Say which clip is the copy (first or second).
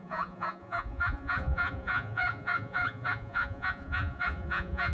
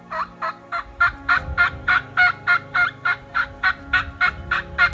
first